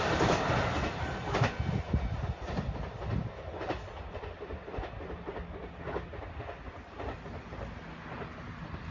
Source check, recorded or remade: recorded